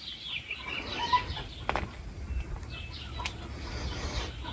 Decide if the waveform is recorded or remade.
recorded